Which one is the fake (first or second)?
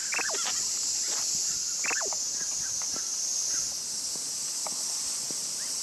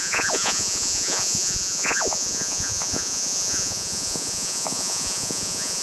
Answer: second